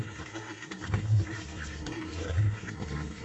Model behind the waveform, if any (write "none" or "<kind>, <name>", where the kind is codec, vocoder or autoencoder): codec, SNAC